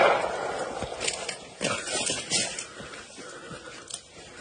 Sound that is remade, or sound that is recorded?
recorded